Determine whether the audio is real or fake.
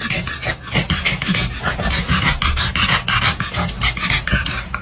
real